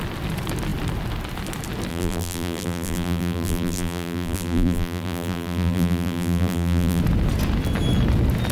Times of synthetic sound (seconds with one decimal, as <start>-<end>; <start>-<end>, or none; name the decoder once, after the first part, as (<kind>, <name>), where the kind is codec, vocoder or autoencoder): 1.9-7.0 (vocoder, BigVGAN v2)